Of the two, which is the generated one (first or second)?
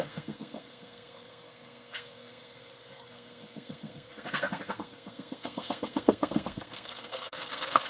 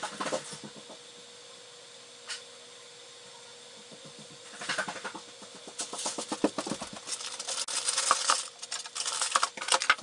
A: first